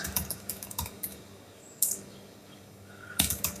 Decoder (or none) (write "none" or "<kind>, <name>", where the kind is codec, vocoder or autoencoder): codec, DAC